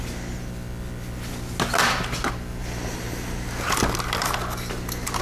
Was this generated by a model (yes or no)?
no